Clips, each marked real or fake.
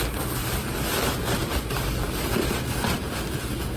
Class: real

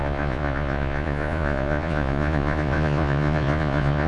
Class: fake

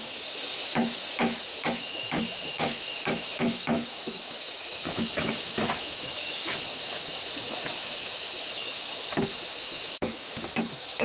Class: fake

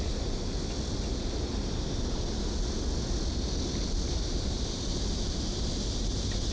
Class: real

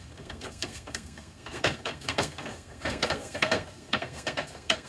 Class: fake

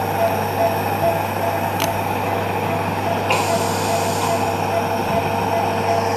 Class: real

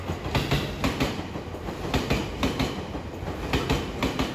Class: real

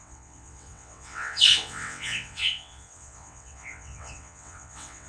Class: fake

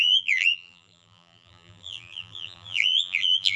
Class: fake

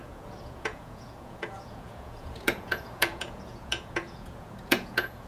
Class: fake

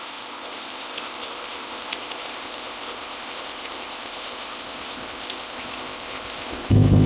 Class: fake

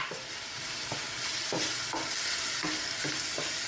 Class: real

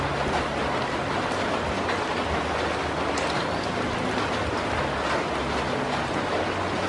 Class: real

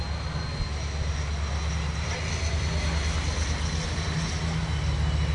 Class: real